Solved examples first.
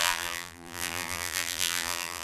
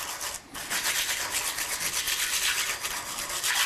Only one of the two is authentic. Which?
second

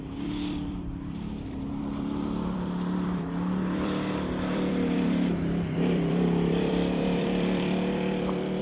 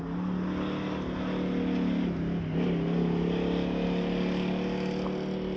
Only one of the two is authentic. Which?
second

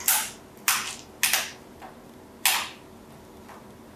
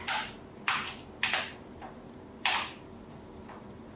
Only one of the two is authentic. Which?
first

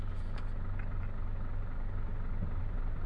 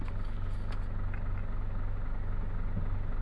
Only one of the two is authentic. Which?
second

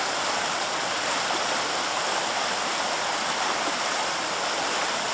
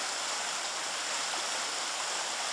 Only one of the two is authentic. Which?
second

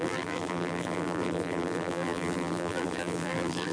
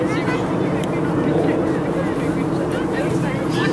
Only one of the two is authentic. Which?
second